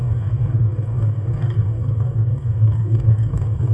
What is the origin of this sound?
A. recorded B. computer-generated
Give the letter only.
B